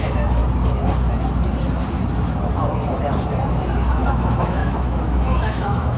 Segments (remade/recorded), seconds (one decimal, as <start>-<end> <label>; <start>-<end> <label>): 0.0-0.4 remade; 0.4-3.9 recorded; 3.9-6.0 remade